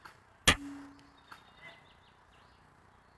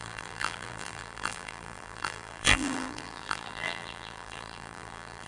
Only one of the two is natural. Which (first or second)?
first